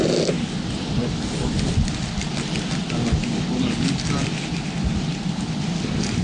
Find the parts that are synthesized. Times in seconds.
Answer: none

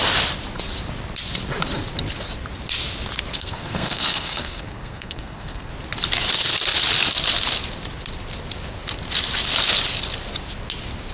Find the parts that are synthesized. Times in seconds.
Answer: 3.3-5.7

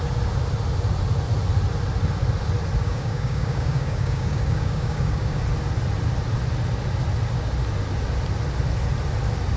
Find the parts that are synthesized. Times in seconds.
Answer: 2.8-5.4